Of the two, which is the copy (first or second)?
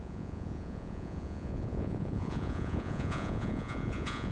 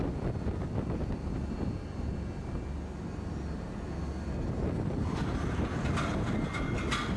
first